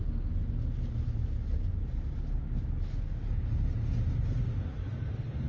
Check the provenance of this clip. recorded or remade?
recorded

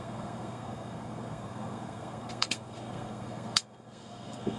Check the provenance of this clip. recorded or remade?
remade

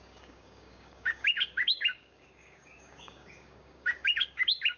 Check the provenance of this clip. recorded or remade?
remade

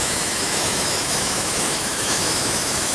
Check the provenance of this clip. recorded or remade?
remade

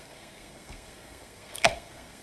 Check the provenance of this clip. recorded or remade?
remade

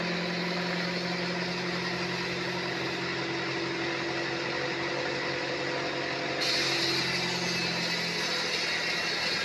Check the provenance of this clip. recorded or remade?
recorded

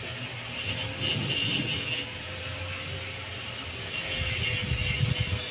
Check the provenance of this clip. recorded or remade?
recorded